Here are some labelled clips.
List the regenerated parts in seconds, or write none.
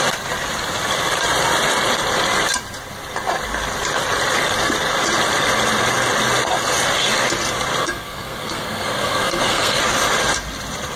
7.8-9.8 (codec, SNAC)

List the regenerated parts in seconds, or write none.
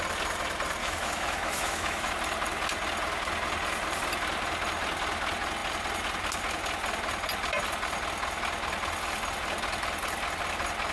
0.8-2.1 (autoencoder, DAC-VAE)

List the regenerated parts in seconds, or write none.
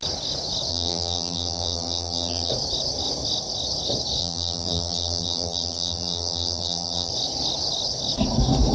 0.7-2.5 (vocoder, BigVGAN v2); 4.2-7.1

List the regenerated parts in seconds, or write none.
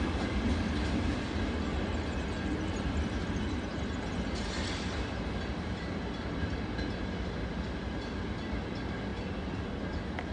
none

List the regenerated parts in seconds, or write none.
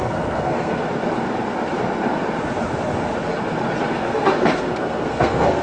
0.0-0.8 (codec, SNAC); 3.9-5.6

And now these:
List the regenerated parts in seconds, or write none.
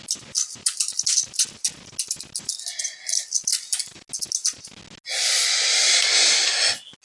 none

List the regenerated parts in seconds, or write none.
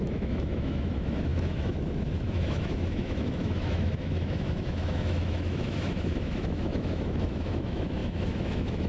0.0-8.9 (autoencoder, DAC-VAE)